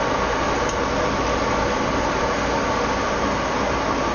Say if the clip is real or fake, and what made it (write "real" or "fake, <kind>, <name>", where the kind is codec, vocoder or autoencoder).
real